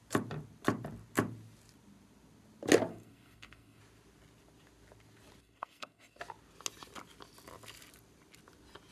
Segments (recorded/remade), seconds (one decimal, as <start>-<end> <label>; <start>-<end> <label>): 0.0-2.9 recorded; 2.9-3.8 remade; 3.8-5.4 recorded; 5.4-6.2 remade; 6.2-8.9 recorded